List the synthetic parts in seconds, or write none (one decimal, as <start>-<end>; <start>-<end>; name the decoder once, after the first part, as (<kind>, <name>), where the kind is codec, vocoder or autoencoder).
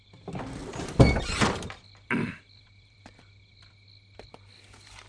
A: 0.6-3.7 (vocoder, BigVGAN v2)